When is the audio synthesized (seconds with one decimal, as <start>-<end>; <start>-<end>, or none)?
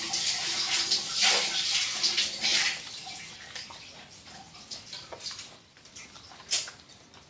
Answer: none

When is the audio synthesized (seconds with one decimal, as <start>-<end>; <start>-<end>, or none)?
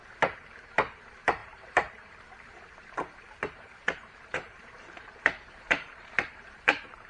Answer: 0.0-7.1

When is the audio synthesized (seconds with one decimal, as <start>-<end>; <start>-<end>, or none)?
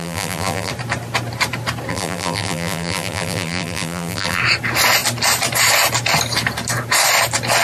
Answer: 0.0-0.7; 1.9-4.4